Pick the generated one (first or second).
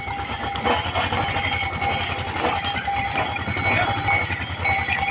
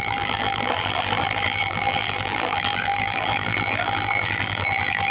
second